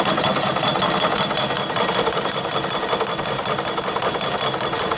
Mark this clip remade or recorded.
recorded